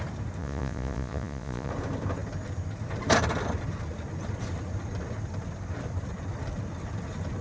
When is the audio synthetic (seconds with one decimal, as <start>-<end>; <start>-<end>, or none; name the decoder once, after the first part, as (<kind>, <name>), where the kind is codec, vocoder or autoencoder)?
0.4-1.7 (vocoder, Vocos)

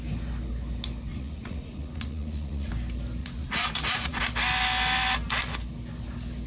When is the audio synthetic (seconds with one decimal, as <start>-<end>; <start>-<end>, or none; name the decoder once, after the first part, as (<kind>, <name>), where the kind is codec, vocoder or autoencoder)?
1.1-2.7 (vocoder, Vocos); 3.2-4.2

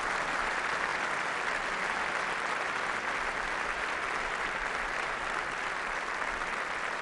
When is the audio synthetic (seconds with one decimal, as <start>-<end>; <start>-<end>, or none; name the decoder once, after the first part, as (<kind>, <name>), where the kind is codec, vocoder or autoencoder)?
none

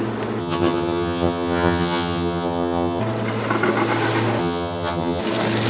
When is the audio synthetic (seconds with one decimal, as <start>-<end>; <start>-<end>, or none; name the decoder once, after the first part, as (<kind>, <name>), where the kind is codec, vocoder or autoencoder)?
0.4-3.0 (vocoder, HiFi-GAN); 4.4-5.2